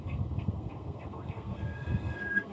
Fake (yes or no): yes